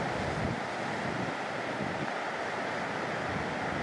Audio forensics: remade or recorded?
recorded